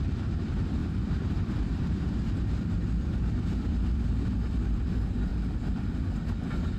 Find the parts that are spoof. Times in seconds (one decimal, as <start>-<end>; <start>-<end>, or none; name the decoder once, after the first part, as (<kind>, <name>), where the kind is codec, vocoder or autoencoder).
0.0-5.3 (vocoder, BigVGAN v2)